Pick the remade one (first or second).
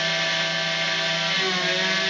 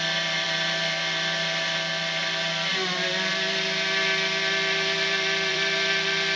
second